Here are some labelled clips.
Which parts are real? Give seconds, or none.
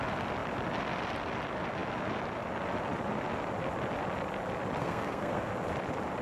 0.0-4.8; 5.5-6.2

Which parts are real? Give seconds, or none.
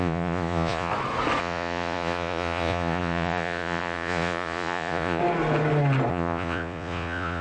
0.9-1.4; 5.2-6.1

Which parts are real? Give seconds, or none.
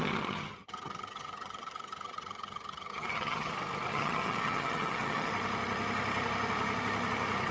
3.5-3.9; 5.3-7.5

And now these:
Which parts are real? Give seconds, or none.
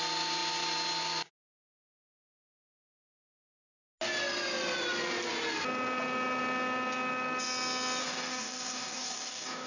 0.0-8.0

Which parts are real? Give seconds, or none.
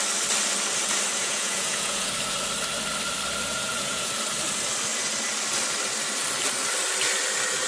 0.0-1.2; 2.1-3.5; 4.1-7.7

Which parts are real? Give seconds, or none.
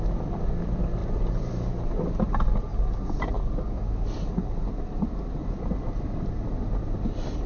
0.0-1.0; 1.7-5.4; 6.5-7.5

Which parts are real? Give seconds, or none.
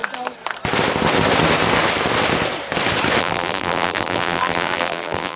0.0-3.2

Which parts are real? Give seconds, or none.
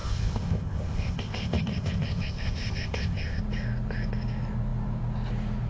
3.4-5.7